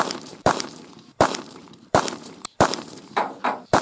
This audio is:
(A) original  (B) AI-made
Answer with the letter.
B